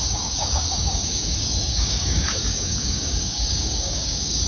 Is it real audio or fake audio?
fake